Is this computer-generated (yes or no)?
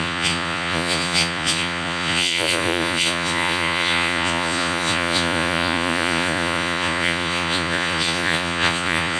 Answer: yes